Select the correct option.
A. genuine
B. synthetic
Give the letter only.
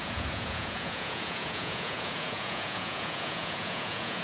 B